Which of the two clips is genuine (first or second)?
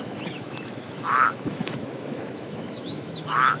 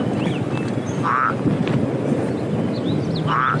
second